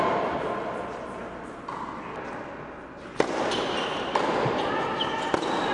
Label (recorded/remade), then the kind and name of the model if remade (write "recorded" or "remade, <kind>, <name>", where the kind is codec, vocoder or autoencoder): recorded